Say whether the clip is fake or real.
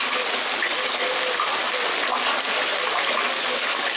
real